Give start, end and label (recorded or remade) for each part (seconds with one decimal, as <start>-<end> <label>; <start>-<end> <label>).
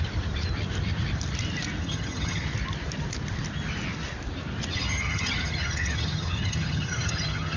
0.0-1.8 recorded; 1.8-2.4 remade; 2.4-4.7 recorded; 4.7-7.6 remade